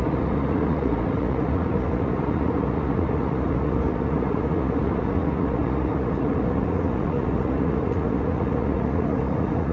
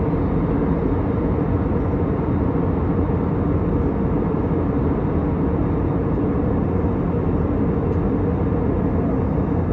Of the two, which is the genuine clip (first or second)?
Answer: second